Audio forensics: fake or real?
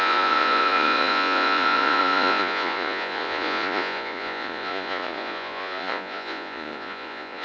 fake